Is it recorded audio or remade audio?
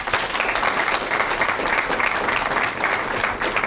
recorded